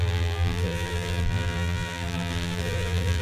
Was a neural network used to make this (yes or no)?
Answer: yes